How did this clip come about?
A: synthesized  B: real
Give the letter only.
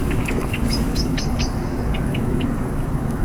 A